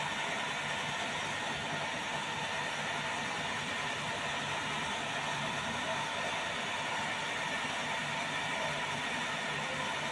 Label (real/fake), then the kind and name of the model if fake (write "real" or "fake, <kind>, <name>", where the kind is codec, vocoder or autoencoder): real